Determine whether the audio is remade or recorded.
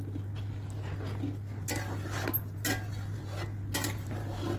recorded